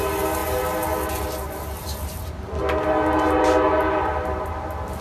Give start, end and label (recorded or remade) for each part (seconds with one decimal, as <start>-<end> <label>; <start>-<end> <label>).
0.0-5.0 recorded